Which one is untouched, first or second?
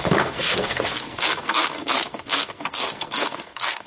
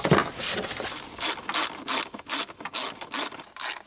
second